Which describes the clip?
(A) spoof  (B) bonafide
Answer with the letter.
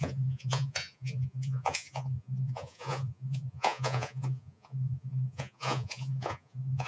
A